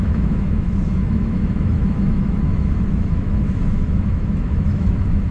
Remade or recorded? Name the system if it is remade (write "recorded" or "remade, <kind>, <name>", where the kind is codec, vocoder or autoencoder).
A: remade, autoencoder, DAC-VAE